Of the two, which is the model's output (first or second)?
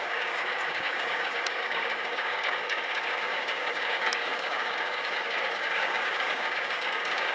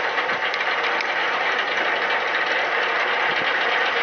first